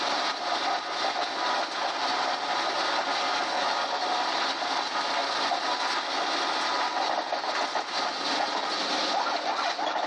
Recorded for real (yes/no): yes